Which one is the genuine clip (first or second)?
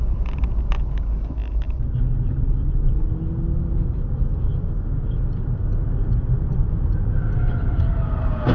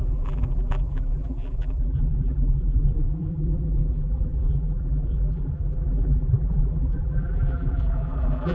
first